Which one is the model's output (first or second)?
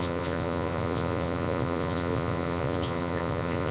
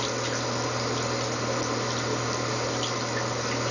first